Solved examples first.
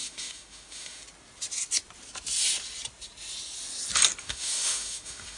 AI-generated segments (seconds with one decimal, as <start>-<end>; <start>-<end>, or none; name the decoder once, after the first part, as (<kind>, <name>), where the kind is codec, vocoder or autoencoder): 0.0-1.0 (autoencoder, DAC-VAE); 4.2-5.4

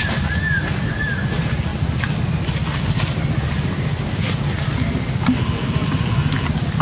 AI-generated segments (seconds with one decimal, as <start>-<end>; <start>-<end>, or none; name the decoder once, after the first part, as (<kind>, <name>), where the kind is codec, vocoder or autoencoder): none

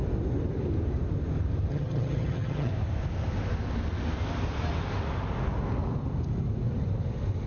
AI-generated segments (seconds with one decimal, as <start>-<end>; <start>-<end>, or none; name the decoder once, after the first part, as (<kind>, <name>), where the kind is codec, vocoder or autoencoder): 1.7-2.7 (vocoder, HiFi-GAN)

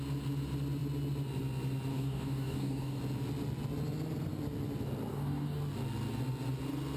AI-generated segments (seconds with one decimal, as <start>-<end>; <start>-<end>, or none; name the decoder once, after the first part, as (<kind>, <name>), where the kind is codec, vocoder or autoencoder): 1.9-3.0 (codec, DAC); 5.1-5.6